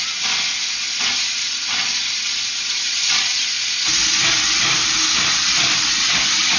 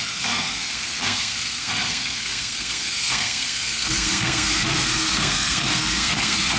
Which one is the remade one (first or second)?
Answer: second